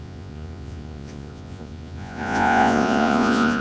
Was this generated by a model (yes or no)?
yes